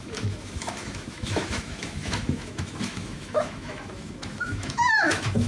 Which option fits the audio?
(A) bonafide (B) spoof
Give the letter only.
B